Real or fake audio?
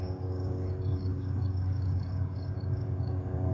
fake